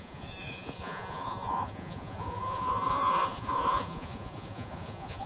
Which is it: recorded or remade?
remade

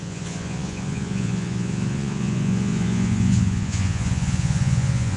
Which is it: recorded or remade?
remade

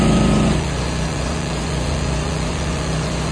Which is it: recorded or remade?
remade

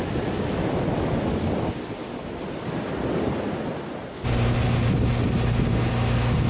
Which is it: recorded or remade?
recorded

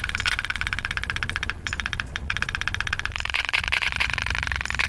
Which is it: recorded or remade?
remade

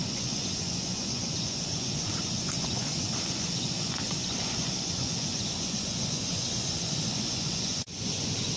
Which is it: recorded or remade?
remade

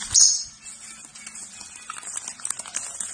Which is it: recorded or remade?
recorded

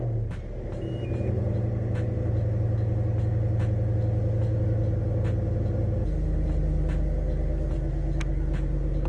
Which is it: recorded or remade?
recorded